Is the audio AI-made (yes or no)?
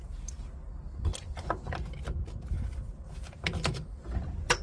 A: no